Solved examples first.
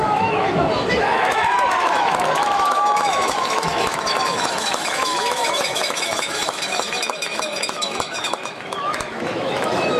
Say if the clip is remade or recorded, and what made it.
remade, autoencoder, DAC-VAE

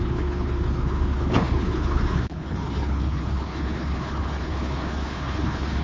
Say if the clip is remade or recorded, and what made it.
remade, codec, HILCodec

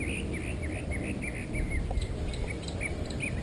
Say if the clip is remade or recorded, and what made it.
recorded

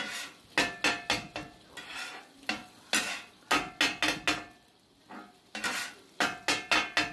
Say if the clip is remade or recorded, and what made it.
recorded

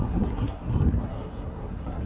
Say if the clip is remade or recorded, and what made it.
remade, codec, SNAC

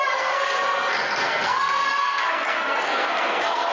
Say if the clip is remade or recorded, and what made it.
remade, codec, SNAC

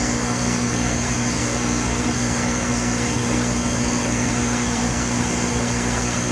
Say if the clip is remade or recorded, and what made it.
remade, codec, SNAC